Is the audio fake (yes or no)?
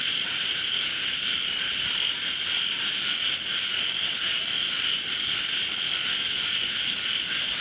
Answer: no